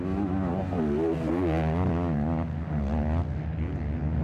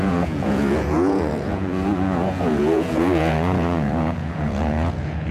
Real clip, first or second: first